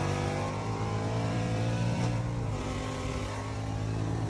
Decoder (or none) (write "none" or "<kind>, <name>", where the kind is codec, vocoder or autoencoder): vocoder, BigVGAN v2